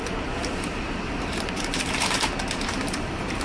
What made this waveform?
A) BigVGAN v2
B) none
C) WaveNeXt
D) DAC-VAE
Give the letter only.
A